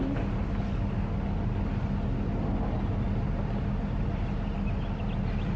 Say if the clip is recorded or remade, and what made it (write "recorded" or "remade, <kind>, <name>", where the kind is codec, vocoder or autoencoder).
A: recorded